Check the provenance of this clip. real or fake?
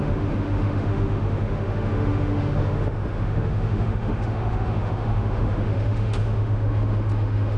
fake